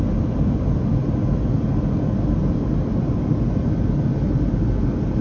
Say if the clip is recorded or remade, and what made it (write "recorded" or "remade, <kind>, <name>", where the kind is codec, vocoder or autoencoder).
recorded